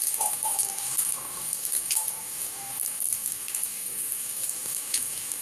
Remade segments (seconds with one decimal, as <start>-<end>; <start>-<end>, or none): 0.0-5.4